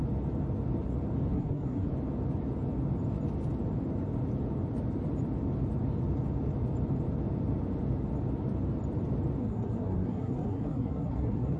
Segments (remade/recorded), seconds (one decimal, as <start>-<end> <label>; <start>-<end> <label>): 0.0-1.3 recorded; 1.3-1.9 remade; 1.9-9.4 recorded; 9.4-11.6 remade